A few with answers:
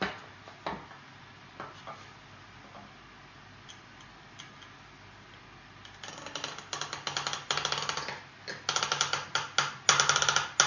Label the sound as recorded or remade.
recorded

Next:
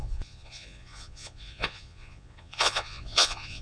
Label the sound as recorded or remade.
remade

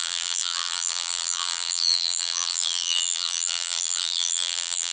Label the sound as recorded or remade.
remade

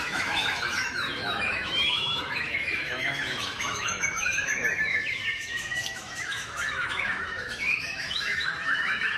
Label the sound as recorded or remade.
remade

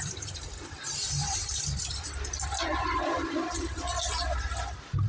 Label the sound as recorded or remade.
recorded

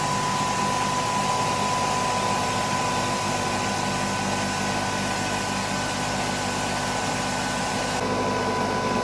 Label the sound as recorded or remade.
recorded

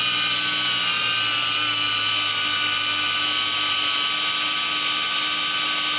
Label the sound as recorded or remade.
recorded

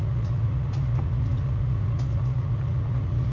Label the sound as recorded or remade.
remade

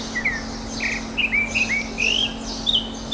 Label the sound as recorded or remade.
recorded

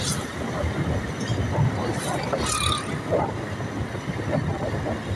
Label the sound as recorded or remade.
recorded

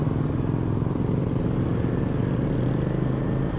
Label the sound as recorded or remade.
recorded